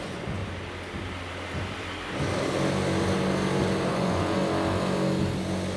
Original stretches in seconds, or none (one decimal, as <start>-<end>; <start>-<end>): 0.4-3.9; 4.4-5.8